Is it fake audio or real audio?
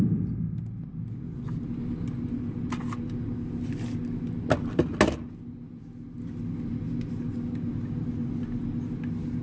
real